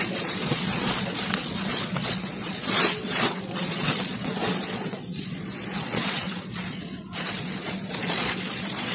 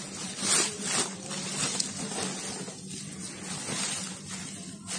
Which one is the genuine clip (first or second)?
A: second